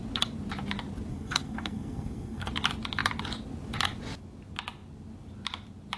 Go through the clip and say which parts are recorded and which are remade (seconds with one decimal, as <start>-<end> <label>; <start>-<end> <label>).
0.0-1.1 recorded; 1.1-2.5 remade; 2.5-6.0 recorded